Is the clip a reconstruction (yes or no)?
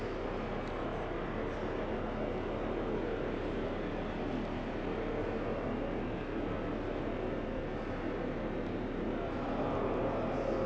no